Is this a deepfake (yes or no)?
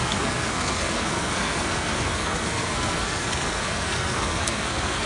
yes